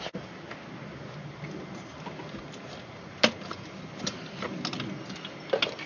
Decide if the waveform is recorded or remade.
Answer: recorded